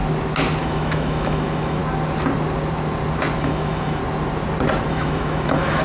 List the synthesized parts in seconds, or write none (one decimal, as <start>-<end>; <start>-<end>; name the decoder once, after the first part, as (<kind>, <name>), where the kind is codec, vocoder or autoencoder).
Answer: 0.6-1.8 (autoencoder, DAC-VAE); 3.4-4.0; 4.9-5.8